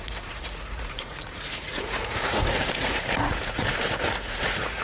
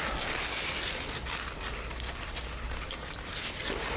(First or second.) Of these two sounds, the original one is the second